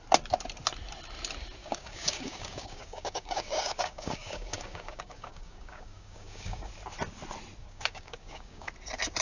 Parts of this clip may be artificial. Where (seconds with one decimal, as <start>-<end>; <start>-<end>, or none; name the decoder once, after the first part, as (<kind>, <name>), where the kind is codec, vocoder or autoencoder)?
1.6-6.7 (codec, DAC); 7.6-8.7